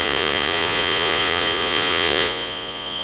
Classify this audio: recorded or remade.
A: remade